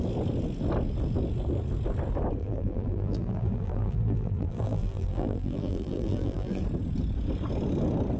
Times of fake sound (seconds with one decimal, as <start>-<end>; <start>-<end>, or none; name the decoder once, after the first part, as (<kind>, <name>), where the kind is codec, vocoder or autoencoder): 2.4-6.6 (vocoder, BigVGAN v2)